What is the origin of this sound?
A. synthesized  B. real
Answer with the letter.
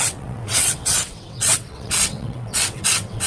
A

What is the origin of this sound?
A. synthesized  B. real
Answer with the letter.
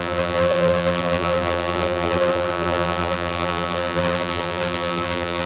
A